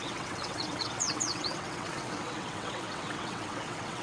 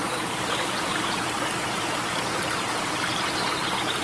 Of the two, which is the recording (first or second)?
second